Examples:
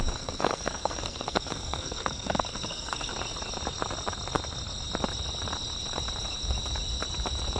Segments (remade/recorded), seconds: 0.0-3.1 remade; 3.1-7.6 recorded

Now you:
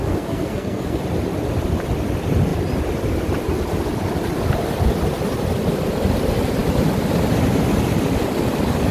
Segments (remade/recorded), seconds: 0.0-1.0 remade; 1.0-8.9 recorded

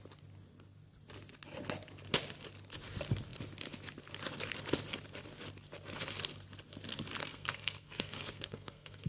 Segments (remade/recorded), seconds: 0.0-7.2 recorded; 7.2-9.1 remade